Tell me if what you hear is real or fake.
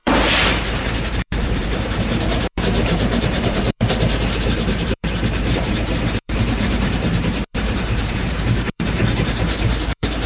fake